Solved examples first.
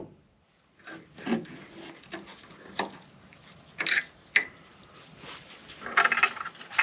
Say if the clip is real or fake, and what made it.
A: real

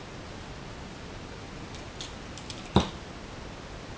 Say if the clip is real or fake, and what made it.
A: real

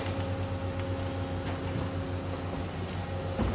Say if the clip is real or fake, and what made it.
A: real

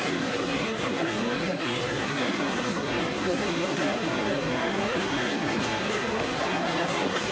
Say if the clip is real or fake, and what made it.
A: fake, codec, SNAC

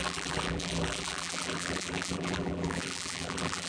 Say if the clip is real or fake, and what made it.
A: fake, vocoder, BigVGAN v2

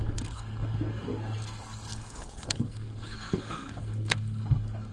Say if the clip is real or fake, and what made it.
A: fake, codec, SNAC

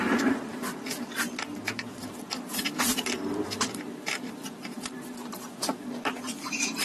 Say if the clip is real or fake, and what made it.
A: fake, vocoder, BigVGAN v2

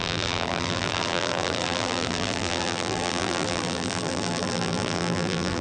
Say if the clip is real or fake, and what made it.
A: fake, vocoder, BigVGAN v2